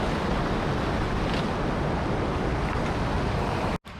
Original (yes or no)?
yes